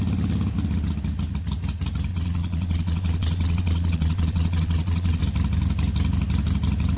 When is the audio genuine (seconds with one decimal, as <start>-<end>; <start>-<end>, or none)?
0.0-2.1; 5.2-7.0